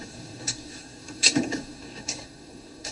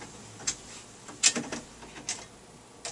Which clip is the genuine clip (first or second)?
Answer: second